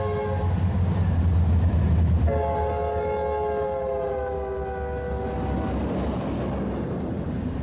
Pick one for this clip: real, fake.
real